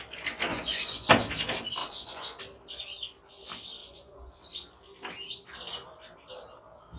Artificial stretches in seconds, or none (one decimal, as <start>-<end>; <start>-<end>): 0.5-1.1; 1.8-2.4; 3.8-4.3